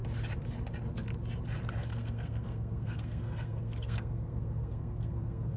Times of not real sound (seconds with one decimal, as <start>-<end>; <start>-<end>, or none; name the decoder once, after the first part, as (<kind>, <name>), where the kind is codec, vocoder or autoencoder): 1.9-5.6 (codec, SNAC)